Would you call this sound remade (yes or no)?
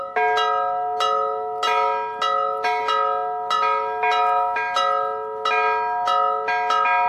no